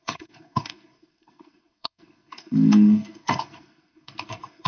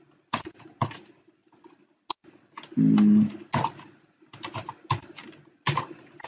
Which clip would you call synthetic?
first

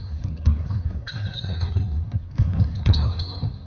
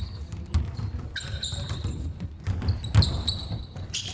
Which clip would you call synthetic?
first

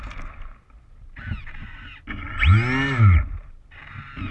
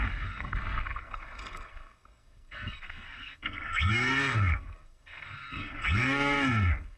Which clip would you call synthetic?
second